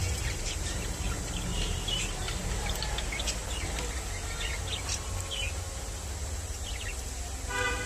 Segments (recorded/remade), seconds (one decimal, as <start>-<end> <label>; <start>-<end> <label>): 0.0-2.2 remade; 2.2-7.9 recorded